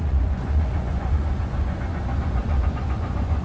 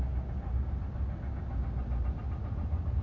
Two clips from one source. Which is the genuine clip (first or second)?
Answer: second